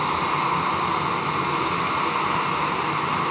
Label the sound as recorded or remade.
recorded